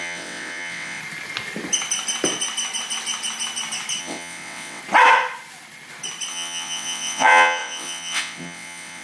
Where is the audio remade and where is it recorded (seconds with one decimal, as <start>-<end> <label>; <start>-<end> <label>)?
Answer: 0.0-1.0 remade; 1.0-4.0 recorded; 4.0-4.8 remade; 4.8-6.3 recorded; 6.3-9.0 remade